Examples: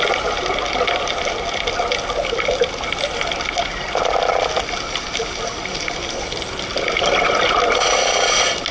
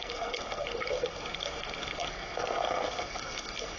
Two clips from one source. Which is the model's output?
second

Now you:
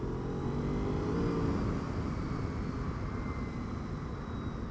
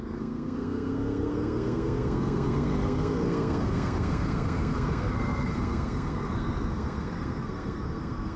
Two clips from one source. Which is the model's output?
second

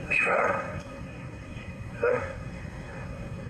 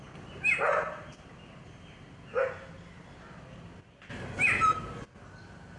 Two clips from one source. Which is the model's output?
first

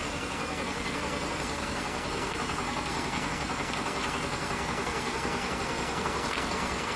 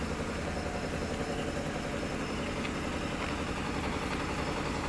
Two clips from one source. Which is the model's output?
first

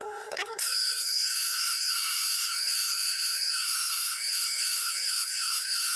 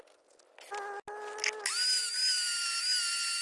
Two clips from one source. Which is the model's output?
first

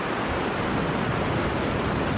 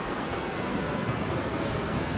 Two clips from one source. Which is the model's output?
second